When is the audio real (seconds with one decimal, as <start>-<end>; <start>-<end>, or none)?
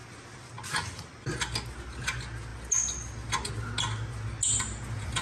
0.0-5.2